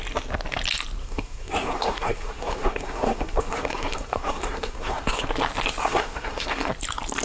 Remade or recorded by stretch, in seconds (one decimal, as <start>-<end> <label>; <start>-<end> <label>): 0.0-1.0 recorded; 1.0-5.3 remade; 5.3-5.8 recorded; 5.8-6.7 remade; 6.7-7.2 recorded